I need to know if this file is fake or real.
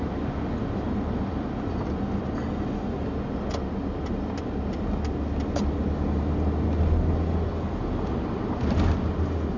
real